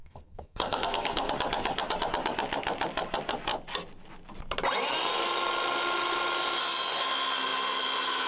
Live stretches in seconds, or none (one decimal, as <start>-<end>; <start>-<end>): 1.3-8.3